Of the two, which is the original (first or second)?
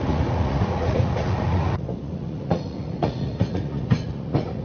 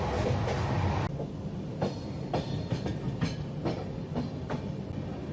second